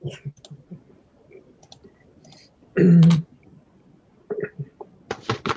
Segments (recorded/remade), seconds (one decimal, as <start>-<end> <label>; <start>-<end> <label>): 0.0-5.6 recorded